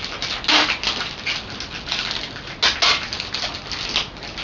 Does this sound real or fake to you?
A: real